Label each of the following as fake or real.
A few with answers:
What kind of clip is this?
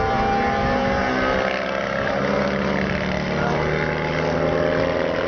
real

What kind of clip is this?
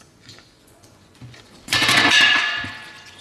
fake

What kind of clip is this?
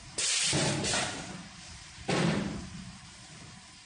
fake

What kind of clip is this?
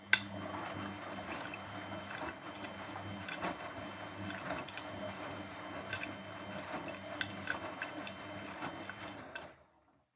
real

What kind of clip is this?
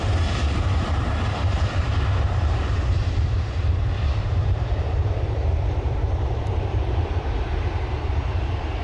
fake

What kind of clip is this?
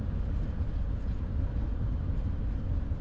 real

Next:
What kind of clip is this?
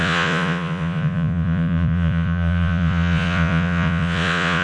fake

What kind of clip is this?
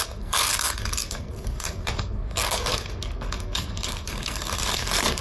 fake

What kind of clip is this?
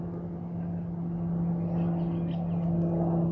real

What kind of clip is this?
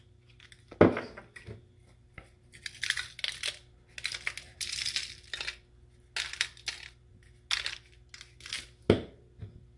real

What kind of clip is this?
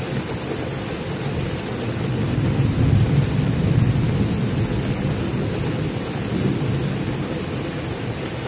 real